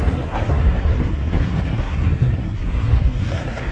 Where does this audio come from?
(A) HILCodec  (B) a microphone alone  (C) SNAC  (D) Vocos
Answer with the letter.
C